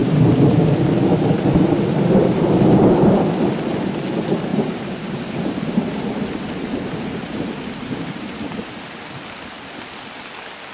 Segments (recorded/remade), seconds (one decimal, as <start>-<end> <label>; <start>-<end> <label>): 0.0-3.2 remade; 3.2-4.5 recorded; 4.5-8.8 remade; 8.8-10.7 recorded

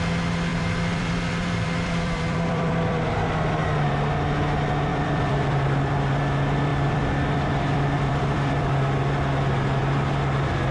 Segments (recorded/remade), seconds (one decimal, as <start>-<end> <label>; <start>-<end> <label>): 0.0-0.5 recorded; 0.5-3.9 remade; 3.9-4.9 recorded; 4.9-6.2 remade; 6.2-6.7 recorded; 6.7-8.7 remade; 8.7-10.7 recorded

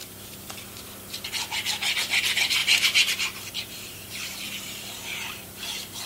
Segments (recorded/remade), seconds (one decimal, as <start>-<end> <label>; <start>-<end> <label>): 0.0-2.6 recorded; 2.6-6.1 remade

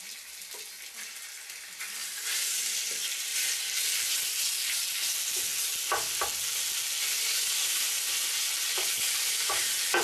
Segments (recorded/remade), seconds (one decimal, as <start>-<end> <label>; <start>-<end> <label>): 0.0-2.0 recorded; 2.0-2.8 remade; 2.8-3.3 recorded; 3.3-4.1 remade; 4.1-10.0 recorded

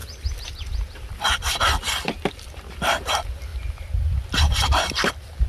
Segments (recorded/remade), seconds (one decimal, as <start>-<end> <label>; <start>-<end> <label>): 0.0-3.5 remade; 3.5-5.1 recorded; 5.1-5.5 remade

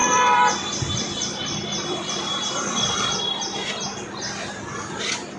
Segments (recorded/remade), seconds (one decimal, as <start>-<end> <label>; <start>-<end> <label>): 0.0-3.2 remade; 3.2-5.4 recorded

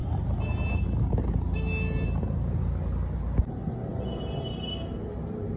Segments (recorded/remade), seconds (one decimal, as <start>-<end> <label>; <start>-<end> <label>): 0.0-3.4 recorded; 3.4-3.9 remade; 3.9-4.9 recorded; 4.9-5.6 remade